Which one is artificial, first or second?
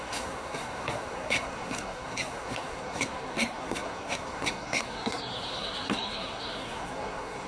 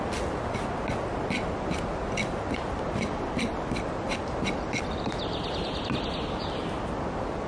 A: first